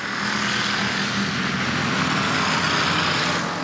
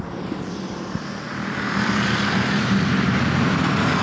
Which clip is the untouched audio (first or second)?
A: first